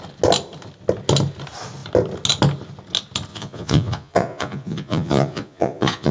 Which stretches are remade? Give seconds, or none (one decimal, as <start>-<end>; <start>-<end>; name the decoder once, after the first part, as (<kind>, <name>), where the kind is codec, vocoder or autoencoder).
3.3-6.1 (vocoder, Vocos)